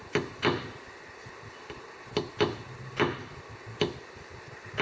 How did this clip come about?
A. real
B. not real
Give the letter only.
A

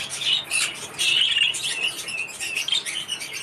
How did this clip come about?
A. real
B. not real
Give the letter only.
A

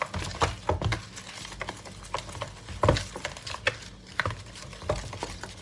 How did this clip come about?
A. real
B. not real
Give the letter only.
A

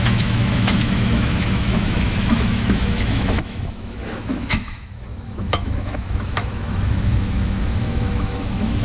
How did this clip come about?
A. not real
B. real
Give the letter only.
A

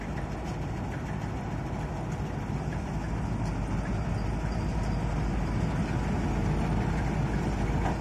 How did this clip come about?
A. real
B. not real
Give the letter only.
A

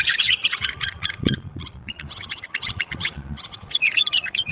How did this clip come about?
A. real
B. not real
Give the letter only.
B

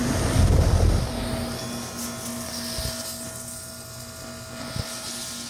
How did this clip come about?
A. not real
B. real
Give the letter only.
B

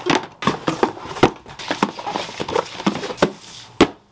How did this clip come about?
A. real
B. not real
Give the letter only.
A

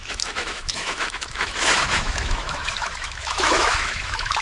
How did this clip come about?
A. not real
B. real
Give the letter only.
A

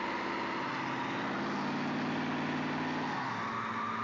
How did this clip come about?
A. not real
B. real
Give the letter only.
B